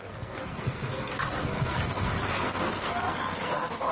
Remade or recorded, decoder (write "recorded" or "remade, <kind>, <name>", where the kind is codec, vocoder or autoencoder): remade, codec, SNAC